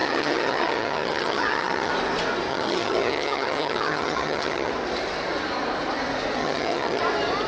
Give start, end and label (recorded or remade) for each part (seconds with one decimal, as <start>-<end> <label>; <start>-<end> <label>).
0.0-1.9 remade; 1.9-2.5 recorded; 2.5-4.7 remade; 4.7-6.4 recorded; 6.4-7.0 remade; 7.0-7.5 recorded